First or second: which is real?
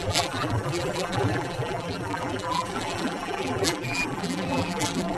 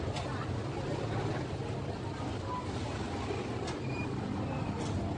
second